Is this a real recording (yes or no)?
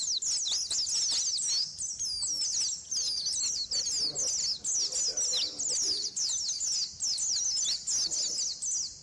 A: yes